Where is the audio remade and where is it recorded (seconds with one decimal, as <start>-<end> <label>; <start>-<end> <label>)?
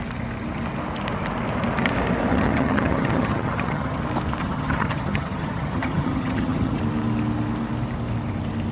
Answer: 0.0-2.3 recorded; 2.3-4.0 remade; 4.0-4.4 recorded; 4.4-6.8 remade; 6.8-8.7 recorded